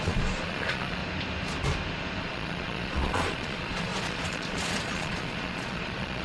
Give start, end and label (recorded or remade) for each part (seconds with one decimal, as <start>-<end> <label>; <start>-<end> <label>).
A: 0.0-1.0 remade; 1.0-2.2 recorded; 2.2-6.2 remade